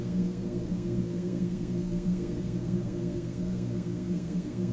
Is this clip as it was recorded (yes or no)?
no